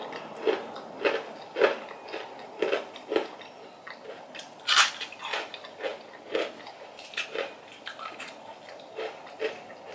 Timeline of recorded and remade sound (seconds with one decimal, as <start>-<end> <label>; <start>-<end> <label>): 0.0-9.9 recorded